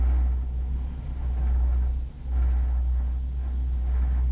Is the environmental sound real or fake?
real